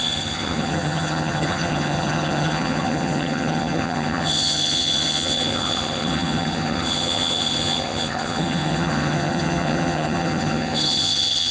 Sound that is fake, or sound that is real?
fake